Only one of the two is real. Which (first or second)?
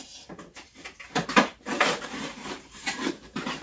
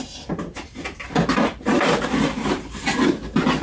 second